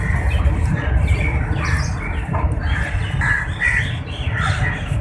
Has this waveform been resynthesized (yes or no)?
no